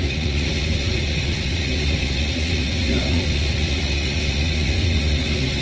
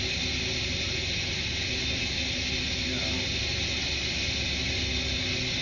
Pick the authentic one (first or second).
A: second